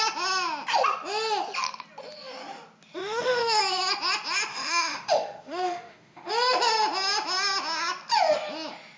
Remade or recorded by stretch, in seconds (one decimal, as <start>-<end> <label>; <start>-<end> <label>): 0.0-3.0 recorded; 3.0-3.6 remade; 3.6-4.5 recorded; 4.5-6.3 remade; 6.3-9.0 recorded